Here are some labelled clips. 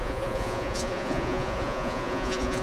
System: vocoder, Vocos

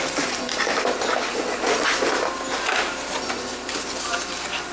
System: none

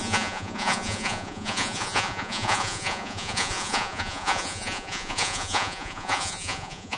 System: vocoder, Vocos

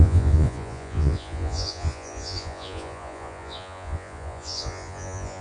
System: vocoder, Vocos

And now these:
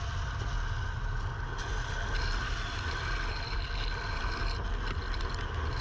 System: none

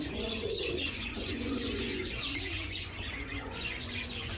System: vocoder, Vocos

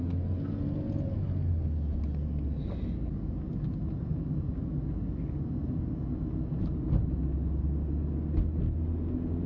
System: none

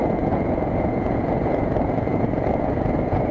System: vocoder, Vocos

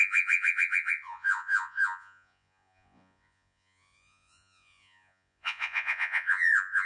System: vocoder, Vocos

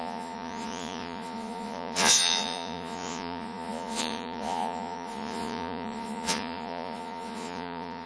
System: vocoder, Vocos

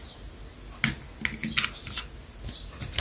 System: none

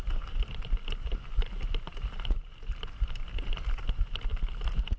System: none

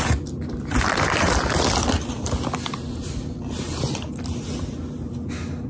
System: none